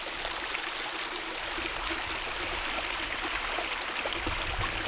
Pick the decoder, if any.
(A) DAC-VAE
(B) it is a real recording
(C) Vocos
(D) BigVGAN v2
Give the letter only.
B